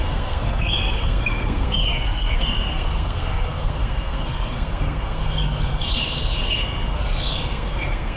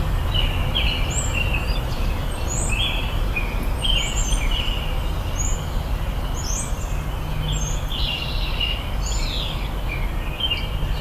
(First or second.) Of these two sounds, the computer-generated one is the first